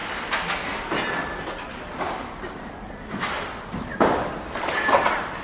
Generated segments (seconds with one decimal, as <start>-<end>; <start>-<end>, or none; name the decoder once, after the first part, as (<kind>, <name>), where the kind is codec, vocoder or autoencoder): none